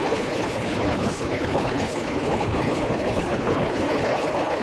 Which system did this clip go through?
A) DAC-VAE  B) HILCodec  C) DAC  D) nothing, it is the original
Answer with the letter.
B